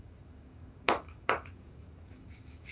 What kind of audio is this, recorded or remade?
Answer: remade